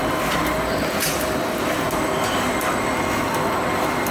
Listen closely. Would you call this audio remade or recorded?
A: recorded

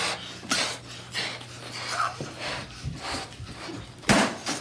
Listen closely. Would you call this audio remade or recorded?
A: recorded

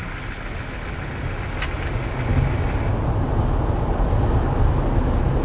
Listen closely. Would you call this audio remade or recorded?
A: recorded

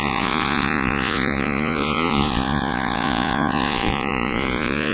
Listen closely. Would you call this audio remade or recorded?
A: remade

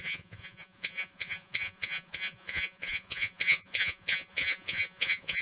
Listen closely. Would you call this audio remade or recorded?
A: remade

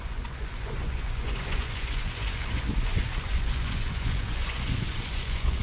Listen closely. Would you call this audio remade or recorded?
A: remade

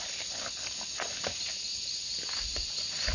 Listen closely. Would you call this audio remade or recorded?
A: recorded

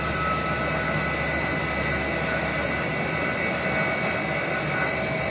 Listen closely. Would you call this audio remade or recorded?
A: recorded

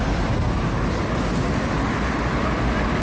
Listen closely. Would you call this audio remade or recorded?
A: recorded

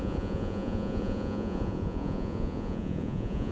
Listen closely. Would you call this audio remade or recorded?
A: remade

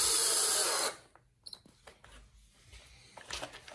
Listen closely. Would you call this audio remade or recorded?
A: recorded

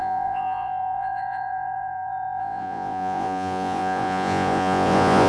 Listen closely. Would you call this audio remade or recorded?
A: remade